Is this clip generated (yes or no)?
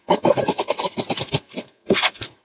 yes